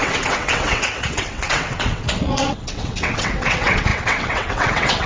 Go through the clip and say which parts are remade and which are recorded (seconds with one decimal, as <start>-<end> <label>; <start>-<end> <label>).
0.0-5.1 remade